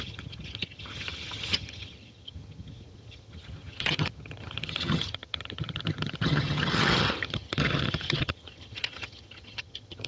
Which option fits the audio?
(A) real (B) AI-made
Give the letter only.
B